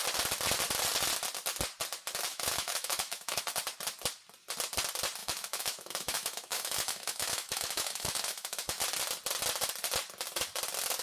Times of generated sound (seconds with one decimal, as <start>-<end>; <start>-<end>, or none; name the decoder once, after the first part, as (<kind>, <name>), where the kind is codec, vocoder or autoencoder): 2.3-3.4 (autoencoder, DAC-VAE); 5.2-8.8